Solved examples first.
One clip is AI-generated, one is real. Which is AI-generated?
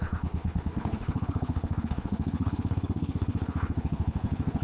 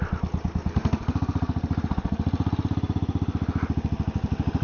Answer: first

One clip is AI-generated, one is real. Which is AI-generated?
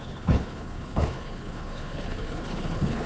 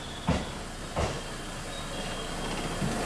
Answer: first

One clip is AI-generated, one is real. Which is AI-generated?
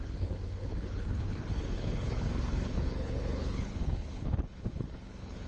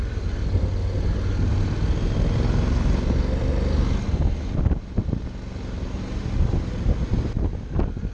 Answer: first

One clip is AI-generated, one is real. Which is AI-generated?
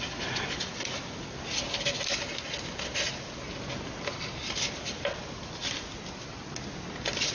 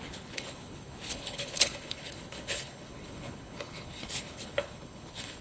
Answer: second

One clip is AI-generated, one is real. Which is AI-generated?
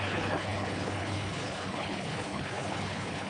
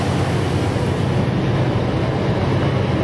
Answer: first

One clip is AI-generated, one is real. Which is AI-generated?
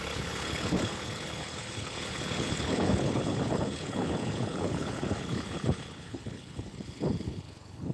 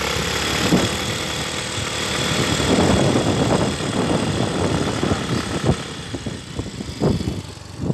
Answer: first